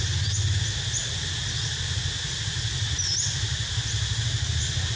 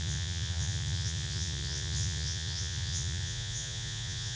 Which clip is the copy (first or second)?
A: second